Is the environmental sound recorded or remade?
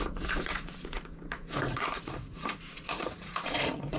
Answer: remade